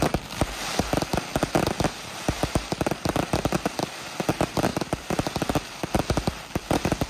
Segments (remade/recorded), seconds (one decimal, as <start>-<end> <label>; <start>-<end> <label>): 0.0-1.1 recorded; 1.1-3.4 remade; 3.4-4.7 recorded; 4.7-5.9 remade; 5.9-7.1 recorded